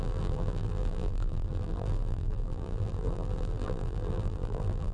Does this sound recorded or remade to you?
remade